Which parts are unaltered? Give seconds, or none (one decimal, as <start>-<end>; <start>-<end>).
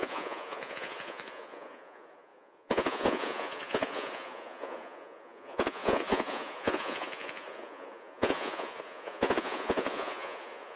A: none